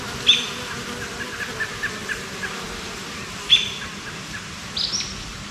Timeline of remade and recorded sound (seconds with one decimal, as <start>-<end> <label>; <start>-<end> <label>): 0.0-2.0 recorded; 2.0-5.5 remade